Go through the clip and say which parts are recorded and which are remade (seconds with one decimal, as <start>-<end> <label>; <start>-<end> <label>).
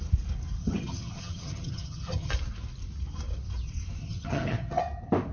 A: 0.0-0.6 recorded; 0.6-2.3 remade; 2.3-4.0 recorded; 4.0-4.8 remade; 4.8-5.3 recorded